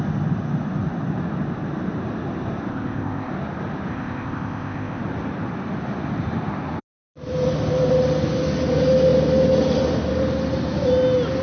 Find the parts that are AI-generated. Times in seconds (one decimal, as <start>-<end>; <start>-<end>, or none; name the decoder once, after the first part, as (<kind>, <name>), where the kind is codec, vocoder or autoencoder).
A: 2.7-3.3 (codec, ZipCodec); 3.9-5.0